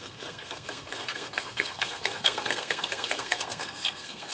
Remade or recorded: remade